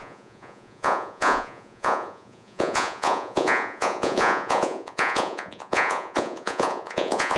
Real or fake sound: fake